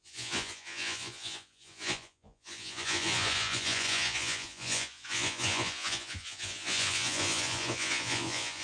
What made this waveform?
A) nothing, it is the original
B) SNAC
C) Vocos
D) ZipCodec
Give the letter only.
C